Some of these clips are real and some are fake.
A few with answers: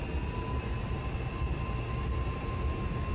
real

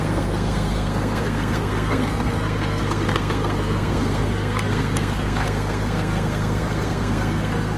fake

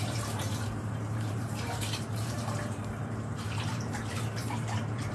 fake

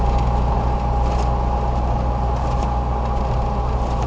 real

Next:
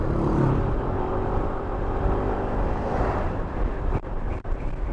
fake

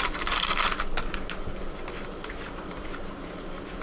real